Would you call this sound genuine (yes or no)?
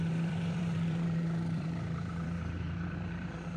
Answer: no